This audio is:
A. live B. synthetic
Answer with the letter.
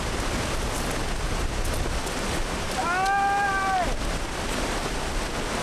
A